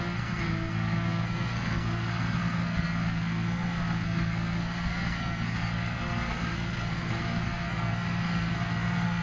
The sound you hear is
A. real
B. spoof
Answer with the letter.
B